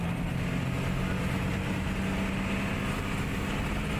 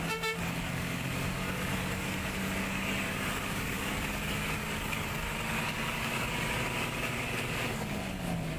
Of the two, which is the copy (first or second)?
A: second